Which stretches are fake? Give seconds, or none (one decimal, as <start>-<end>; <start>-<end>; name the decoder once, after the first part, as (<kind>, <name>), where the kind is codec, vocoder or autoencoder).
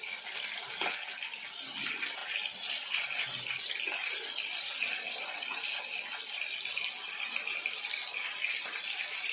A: none